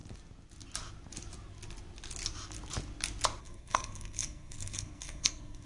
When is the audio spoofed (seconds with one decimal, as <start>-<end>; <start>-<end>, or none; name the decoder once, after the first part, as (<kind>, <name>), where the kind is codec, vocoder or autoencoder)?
3.4-5.7 (codec, SNAC)